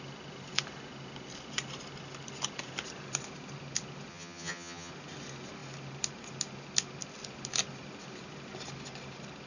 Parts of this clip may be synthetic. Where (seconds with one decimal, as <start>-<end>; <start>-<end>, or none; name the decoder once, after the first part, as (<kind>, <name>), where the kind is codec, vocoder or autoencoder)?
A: 4.1-4.9 (vocoder, HiFi-GAN)